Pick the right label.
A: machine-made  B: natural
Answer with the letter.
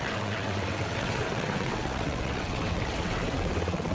A